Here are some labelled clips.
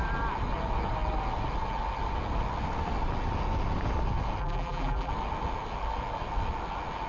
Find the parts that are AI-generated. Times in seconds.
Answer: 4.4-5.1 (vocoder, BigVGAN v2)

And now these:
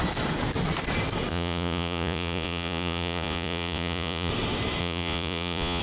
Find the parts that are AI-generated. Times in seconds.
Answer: 1.3-4.3 (vocoder, Vocos); 4.8-5.8

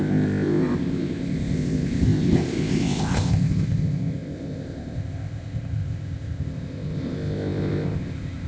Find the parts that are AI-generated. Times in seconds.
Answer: 0.0-8.5 (codec, ZipCodec)

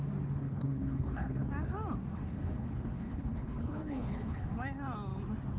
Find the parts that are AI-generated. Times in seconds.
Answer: 0.4-1.5 (codec, HILCodec); 2.1-4.5

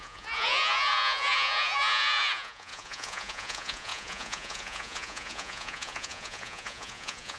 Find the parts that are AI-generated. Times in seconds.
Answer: 0.0-7.4 (vocoder, Vocos)

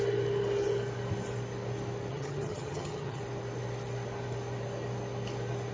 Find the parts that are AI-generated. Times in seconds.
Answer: 2.1-3.2 (vocoder, HiFi-GAN)

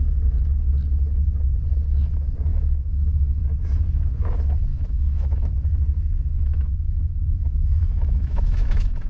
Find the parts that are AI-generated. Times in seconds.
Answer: 2.5-3.4 (autoencoder, DAC-VAE); 4.7-5.5; 6.3-9.1

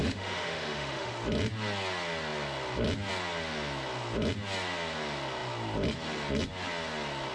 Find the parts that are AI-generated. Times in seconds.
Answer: 0.0-1.1 (autoencoder, DAC-VAE)